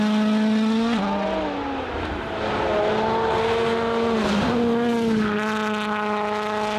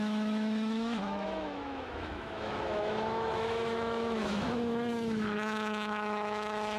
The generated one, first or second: second